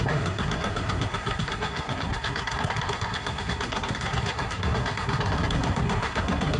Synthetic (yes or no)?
yes